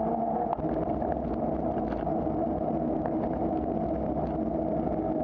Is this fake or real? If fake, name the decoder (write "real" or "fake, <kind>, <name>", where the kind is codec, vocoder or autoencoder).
real